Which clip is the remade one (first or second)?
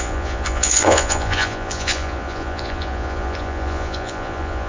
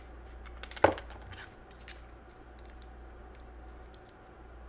first